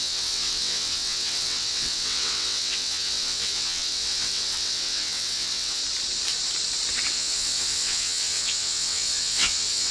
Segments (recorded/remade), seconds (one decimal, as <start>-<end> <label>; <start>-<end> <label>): 0.0-5.8 remade; 5.8-7.1 recorded; 7.1-9.9 remade